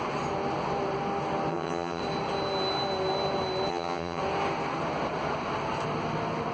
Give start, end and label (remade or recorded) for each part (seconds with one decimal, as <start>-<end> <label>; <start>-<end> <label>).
0.0-1.5 recorded; 1.5-2.0 remade; 2.0-3.7 recorded; 3.7-4.2 remade; 4.2-6.5 recorded